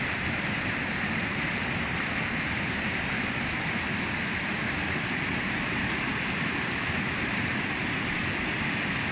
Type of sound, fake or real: real